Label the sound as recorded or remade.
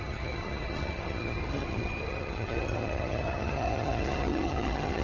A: remade